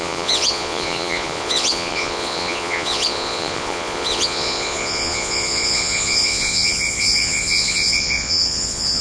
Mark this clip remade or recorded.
remade